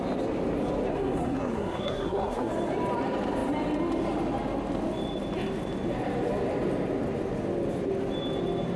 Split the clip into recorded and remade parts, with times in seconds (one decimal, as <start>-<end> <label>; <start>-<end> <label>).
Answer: 0.0-0.9 recorded; 0.9-2.5 remade; 2.5-8.8 recorded